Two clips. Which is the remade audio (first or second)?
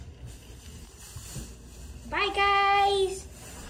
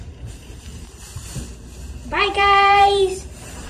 second